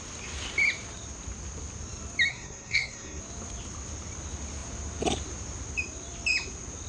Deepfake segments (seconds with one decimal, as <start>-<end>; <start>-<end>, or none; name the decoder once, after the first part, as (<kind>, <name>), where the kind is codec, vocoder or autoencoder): 2.3-3.2 (codec, SNAC)